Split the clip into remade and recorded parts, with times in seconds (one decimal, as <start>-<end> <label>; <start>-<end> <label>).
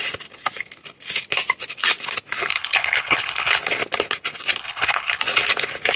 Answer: 0.0-2.5 recorded; 2.5-3.6 remade; 3.6-4.6 recorded; 4.6-5.2 remade; 5.2-6.0 recorded